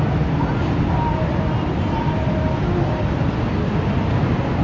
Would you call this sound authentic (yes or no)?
yes